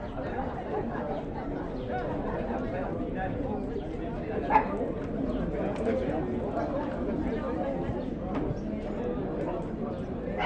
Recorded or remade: recorded